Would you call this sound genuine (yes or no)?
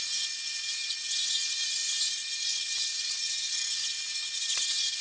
no